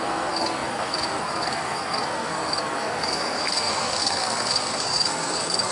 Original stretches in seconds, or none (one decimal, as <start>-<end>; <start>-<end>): none